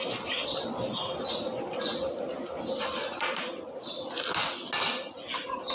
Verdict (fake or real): real